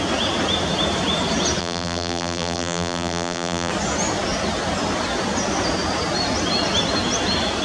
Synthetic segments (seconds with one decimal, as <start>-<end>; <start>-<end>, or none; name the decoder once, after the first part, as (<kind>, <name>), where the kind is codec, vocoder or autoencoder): 1.6-3.7 (vocoder, BigVGAN v2)

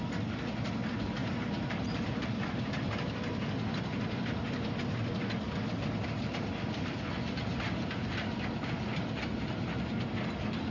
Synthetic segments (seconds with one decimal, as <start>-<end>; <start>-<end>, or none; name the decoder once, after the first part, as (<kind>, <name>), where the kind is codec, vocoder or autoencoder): 1.2-2.9 (vocoder, BigVGAN v2); 7.5-8.5; 8.9-10.0